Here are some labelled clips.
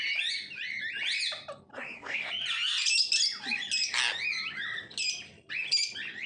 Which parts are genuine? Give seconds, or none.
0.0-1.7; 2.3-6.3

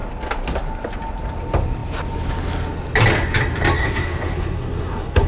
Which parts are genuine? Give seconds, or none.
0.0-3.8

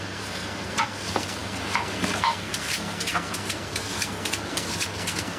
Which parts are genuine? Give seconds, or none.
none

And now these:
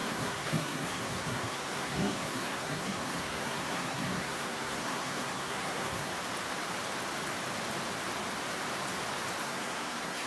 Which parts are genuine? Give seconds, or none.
6.1-9.4

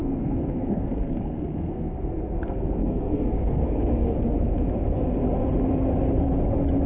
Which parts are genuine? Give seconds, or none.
4.1-6.9